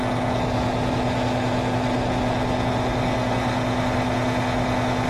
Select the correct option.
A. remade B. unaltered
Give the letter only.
B